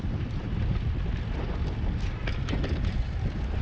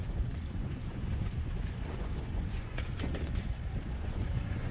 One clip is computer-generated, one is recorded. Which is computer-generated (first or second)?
second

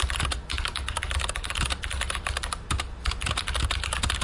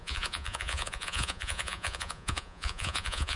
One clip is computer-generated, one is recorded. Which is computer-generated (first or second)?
second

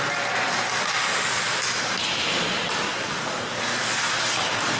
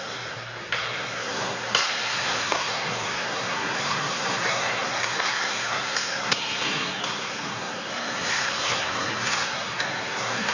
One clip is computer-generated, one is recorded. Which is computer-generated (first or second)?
second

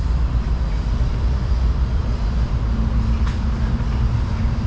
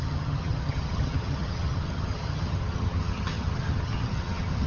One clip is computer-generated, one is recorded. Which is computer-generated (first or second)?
second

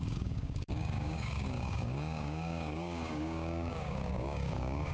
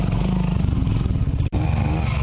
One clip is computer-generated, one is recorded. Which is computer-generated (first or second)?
first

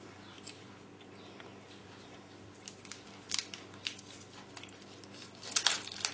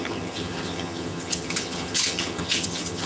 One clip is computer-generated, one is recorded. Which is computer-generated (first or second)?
second